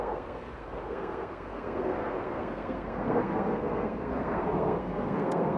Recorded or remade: remade